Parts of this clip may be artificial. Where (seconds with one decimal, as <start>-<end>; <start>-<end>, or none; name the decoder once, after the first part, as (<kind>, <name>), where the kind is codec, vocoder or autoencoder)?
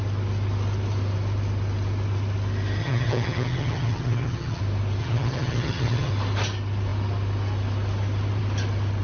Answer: 2.8-4.6 (vocoder, HiFi-GAN); 5.0-6.1